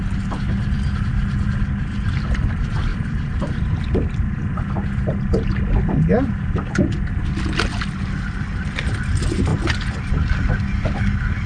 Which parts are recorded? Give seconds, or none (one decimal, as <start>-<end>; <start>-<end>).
0.0-2.9; 3.8-11.5